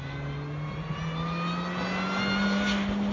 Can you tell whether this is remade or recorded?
recorded